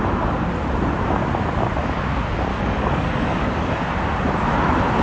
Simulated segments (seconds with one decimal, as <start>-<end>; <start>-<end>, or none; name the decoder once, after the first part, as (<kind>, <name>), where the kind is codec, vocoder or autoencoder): 2.5-3.7 (codec, DAC)